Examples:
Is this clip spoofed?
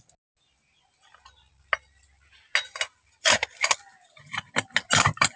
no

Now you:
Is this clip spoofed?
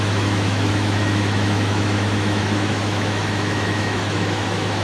yes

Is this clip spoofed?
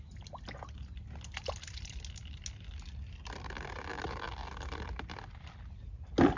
no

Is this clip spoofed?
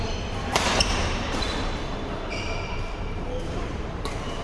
yes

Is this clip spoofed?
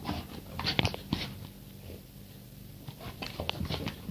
yes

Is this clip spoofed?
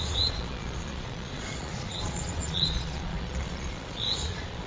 yes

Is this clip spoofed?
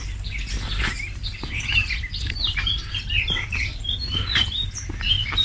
yes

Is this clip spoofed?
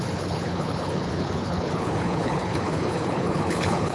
yes